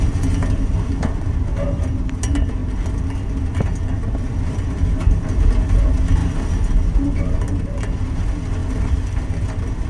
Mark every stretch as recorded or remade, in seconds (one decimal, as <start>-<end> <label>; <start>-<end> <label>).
0.0-3.9 recorded; 3.9-5.1 remade; 5.1-8.6 recorded; 8.6-9.3 remade; 9.3-9.9 recorded